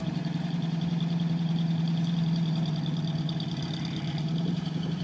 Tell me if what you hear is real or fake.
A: fake